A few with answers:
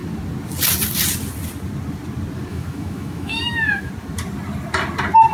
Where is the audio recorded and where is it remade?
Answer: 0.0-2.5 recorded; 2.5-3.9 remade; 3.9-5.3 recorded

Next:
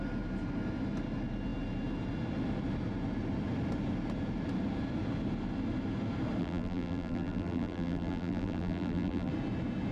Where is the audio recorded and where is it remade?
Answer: 0.0-6.4 recorded; 6.4-9.3 remade; 9.3-9.9 recorded

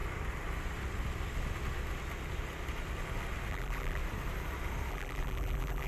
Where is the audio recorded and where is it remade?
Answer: 0.0-3.5 recorded; 3.5-4.0 remade; 4.0-4.9 recorded; 4.9-5.9 remade

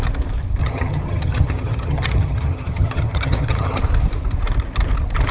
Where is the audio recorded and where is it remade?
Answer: 0.0-0.6 recorded; 0.6-3.8 remade; 3.8-5.3 recorded

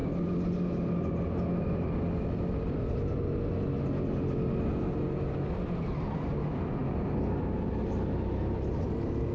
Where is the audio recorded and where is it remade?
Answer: 0.0-9.3 recorded

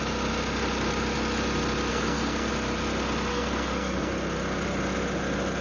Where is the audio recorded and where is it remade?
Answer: 0.0-1.9 recorded; 1.9-2.5 remade; 2.5-3.3 recorded; 3.3-4.1 remade; 4.1-5.6 recorded

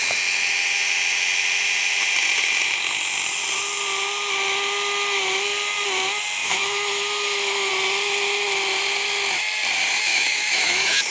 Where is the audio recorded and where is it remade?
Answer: 0.0-6.4 recorded; 6.4-7.7 remade; 7.7-10.1 recorded; 10.1-11.1 remade

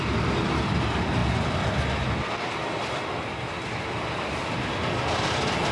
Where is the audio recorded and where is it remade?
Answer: 0.0-5.7 recorded